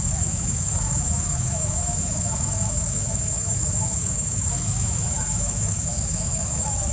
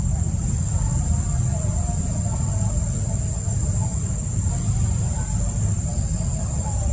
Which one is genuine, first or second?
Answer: second